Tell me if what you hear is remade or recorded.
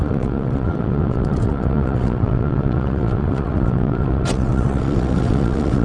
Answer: remade